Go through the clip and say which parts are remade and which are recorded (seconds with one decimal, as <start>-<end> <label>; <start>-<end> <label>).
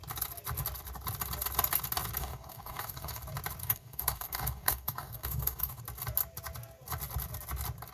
0.0-2.2 recorded; 2.2-3.2 remade; 3.2-3.6 recorded; 3.6-5.8 remade; 5.8-7.9 recorded